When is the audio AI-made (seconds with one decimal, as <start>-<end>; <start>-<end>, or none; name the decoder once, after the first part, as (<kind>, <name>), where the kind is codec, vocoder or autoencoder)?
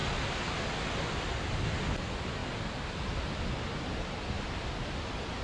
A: none